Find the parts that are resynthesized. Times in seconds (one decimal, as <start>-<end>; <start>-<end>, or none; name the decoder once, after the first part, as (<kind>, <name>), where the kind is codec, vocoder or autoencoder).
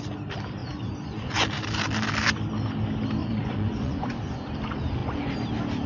0.6-1.3 (vocoder, Vocos); 3.2-4.5